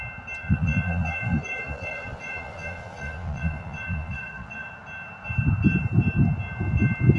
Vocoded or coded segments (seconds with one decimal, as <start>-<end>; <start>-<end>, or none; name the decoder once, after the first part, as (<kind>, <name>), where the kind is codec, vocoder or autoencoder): 0.4-4.7 (vocoder, Vocos)